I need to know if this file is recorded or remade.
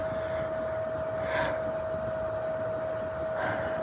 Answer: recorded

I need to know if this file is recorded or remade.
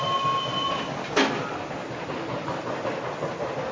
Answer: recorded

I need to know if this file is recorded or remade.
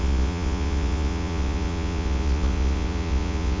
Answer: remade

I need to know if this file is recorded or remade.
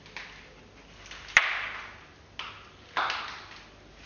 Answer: recorded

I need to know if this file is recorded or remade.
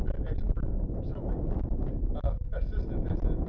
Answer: recorded